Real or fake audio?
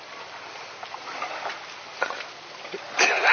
real